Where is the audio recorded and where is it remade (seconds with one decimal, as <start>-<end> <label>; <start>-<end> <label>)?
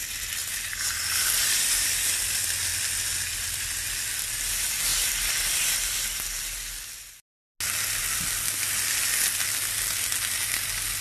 0.0-11.0 recorded